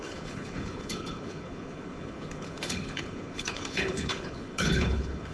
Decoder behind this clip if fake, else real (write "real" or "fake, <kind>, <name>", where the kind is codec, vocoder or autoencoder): fake, codec, HILCodec